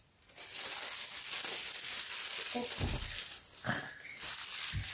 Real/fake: real